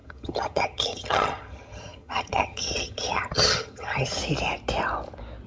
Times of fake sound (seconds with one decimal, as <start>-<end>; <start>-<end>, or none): 0.0-4.2